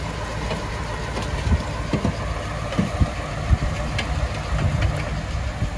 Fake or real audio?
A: real